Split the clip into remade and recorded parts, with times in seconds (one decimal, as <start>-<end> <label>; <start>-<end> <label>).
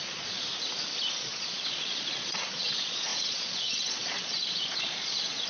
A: 0.0-0.4 remade; 0.4-1.1 recorded; 1.1-5.5 remade